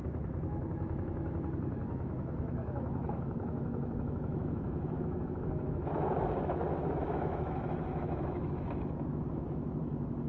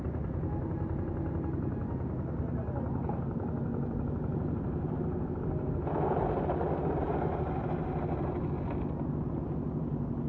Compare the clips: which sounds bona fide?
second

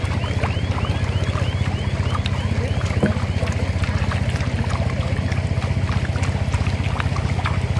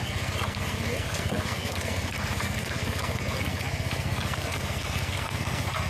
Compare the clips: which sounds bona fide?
first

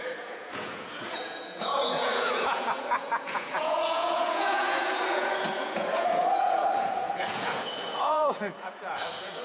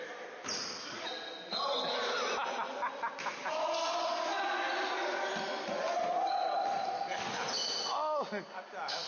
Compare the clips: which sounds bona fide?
second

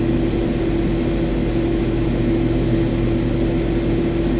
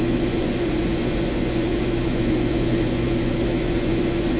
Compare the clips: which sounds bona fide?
first